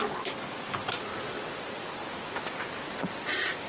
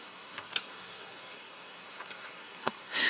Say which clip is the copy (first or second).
second